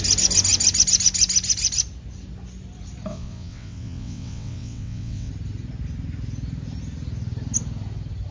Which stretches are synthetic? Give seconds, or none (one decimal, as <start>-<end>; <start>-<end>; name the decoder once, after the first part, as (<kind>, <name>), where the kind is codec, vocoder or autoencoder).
3.1-5.3 (vocoder, WaveNeXt)